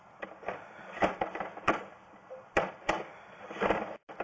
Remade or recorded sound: remade